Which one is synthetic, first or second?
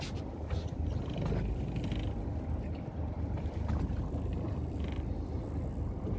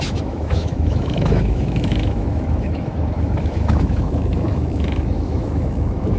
second